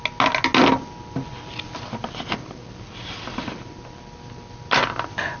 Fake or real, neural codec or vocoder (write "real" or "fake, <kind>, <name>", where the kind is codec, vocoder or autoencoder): real